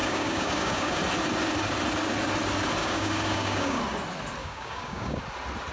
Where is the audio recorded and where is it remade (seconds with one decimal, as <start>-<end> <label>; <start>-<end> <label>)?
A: 0.0-1.0 remade; 1.0-2.8 recorded; 2.8-3.8 remade; 3.8-4.4 recorded; 4.4-5.2 remade; 5.2-5.7 recorded